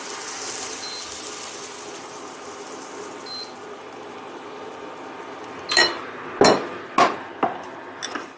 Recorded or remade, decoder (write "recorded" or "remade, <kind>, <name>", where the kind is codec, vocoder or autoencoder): recorded